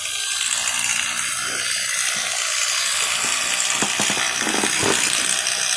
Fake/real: real